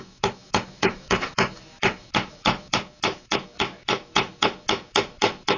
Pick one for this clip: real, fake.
fake